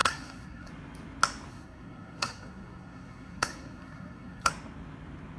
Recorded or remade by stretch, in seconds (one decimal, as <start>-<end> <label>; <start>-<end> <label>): 0.0-0.7 remade; 0.7-1.5 recorded; 1.5-4.5 remade; 4.5-5.4 recorded